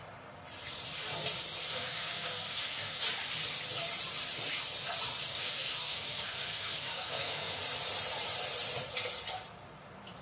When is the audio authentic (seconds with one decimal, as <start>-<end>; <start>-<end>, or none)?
0.0-1.7; 3.0-5.3; 7.6-10.2